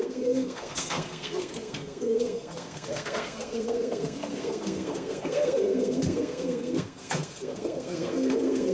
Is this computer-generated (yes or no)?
yes